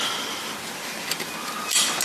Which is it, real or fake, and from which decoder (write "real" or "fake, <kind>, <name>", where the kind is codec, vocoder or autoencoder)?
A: real